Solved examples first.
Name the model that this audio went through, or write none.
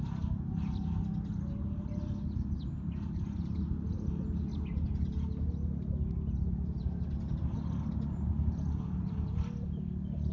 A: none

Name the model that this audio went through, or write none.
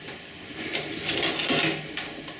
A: none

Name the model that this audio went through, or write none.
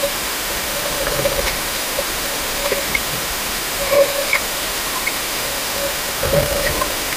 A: autoencoder, DAC-VAE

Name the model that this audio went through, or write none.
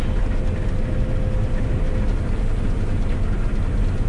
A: none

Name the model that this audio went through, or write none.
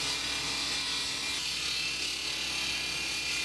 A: none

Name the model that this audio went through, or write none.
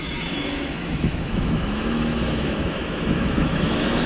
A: autoencoder, DAC-VAE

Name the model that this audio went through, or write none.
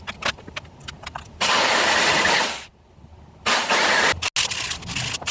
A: none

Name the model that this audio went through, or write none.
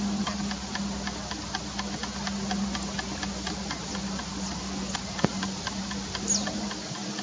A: none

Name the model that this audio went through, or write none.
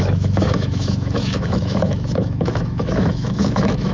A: autoencoder, DAC-VAE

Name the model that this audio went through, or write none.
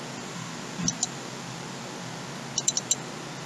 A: none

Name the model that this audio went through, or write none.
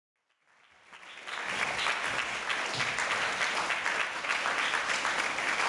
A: none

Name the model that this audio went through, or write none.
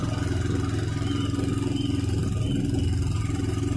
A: none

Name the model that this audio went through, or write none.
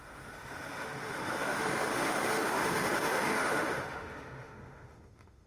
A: autoencoder, DAC-VAE